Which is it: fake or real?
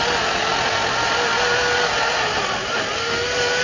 real